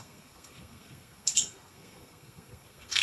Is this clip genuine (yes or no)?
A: no